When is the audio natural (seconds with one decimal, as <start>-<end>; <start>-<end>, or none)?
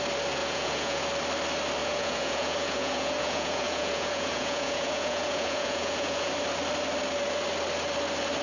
0.0-0.4; 1.0-1.8; 6.3-8.4